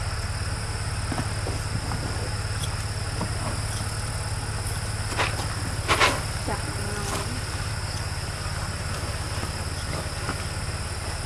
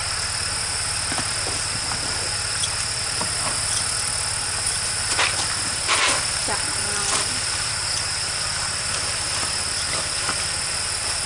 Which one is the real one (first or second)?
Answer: first